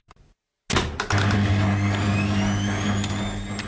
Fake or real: real